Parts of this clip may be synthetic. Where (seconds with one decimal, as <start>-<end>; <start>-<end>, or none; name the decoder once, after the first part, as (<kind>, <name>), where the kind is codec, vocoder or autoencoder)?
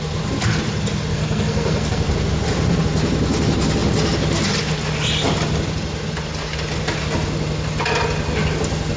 1.1-2.1 (codec, SNAC)